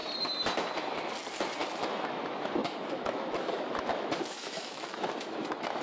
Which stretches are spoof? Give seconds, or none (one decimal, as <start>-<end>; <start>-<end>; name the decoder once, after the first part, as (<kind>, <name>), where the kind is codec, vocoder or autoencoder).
1.6-2.2 (autoencoder, DAC-VAE); 2.6-5.8